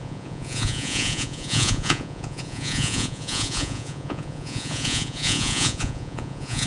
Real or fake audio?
fake